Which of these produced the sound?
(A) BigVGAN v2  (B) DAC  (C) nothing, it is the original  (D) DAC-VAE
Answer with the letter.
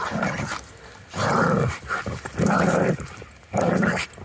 C